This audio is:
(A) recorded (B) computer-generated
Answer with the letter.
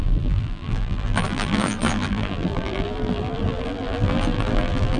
B